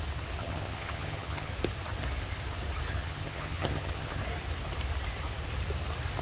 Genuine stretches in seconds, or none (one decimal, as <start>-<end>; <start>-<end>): 0.0-0.4; 1.5-2.9; 4.2-6.2